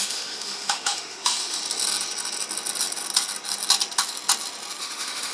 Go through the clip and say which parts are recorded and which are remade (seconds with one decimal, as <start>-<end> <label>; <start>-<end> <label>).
0.0-1.6 remade; 1.6-4.8 recorded; 4.8-5.3 remade